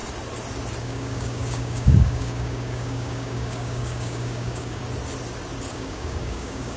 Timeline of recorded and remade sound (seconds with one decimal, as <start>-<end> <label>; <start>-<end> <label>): 0.0-0.8 recorded; 0.8-4.8 remade; 4.8-5.7 recorded; 5.7-6.8 remade